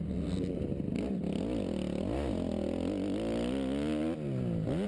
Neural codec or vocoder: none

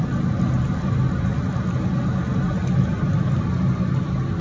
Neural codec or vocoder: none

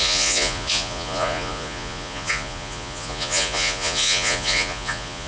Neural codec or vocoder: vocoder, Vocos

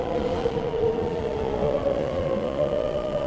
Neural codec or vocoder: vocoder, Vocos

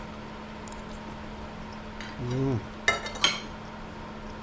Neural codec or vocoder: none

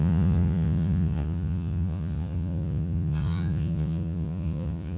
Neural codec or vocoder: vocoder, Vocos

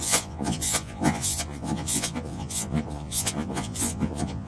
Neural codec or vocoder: vocoder, Vocos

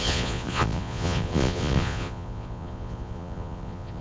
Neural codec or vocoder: vocoder, Vocos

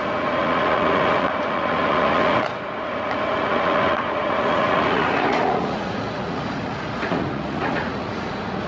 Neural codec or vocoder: vocoder, Vocos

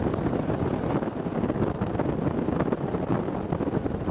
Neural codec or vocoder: none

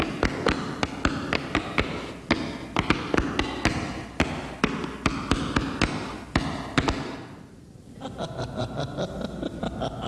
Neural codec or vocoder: none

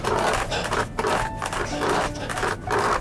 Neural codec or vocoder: none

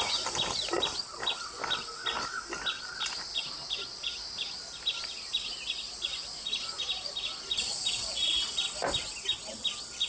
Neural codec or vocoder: none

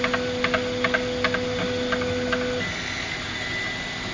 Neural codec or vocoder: none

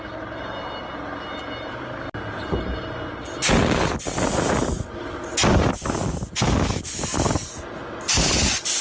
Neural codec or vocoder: none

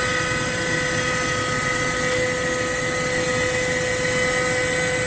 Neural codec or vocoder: none